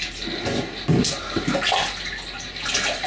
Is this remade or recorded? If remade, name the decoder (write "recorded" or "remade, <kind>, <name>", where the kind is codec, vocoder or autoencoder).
recorded